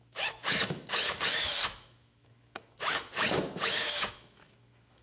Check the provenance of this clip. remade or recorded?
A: remade